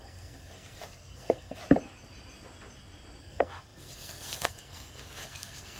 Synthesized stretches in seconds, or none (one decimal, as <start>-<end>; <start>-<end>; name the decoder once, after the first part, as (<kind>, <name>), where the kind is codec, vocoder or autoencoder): 0.0-1.6 (codec, SNAC); 3.2-5.8